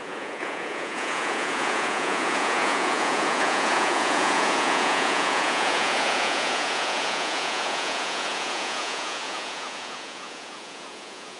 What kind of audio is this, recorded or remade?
remade